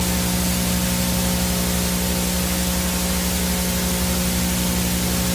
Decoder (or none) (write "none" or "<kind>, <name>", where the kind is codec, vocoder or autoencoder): none